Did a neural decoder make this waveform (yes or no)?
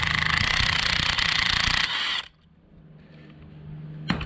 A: no